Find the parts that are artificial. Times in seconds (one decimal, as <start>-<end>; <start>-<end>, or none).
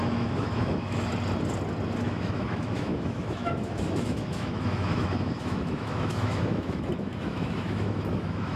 0.0-1.1; 2.0-8.6